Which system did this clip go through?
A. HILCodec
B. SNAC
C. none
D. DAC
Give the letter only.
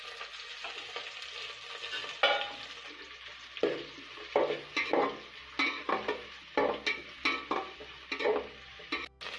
C